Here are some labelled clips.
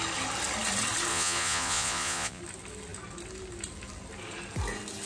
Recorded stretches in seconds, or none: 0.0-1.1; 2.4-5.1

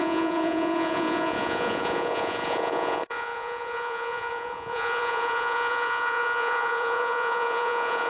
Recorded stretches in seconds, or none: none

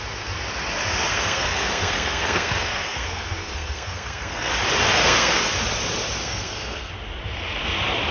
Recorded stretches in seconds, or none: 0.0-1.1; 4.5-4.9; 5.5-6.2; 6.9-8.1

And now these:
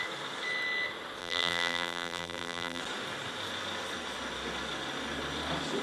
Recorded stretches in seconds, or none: 0.0-1.2; 2.8-5.8

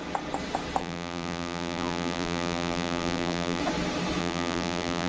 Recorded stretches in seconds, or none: 0.0-0.8; 3.6-4.2

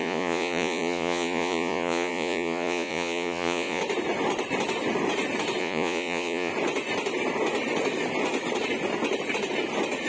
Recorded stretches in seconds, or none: 3.8-5.6; 6.5-10.1

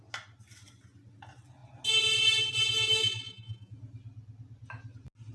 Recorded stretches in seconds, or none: 0.0-3.0; 3.7-5.3